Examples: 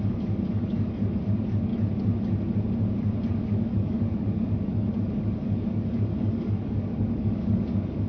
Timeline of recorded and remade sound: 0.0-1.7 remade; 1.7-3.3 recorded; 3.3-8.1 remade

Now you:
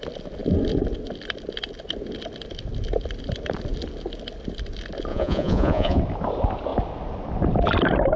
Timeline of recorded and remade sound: 0.0-5.1 recorded; 5.1-6.0 remade; 6.0-8.2 recorded

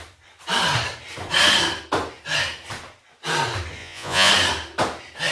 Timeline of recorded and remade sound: 0.0-3.8 recorded; 3.8-4.3 remade; 4.3-5.3 recorded

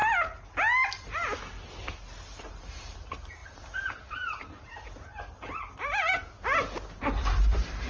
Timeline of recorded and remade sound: 0.0-2.5 recorded; 2.5-7.9 remade